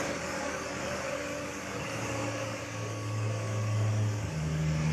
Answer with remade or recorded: remade